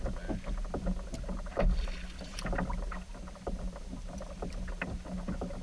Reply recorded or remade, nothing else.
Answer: recorded